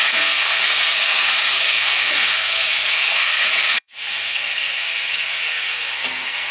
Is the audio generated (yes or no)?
yes